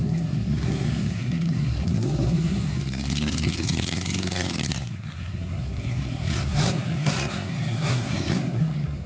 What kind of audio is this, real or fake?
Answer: fake